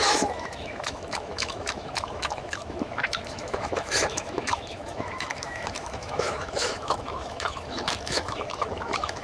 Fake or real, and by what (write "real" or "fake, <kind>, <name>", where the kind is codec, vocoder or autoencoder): fake, autoencoder, DAC-VAE